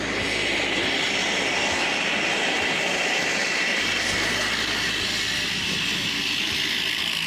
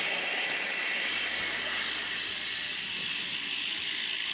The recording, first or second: second